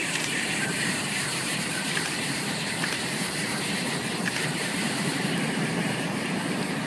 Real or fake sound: fake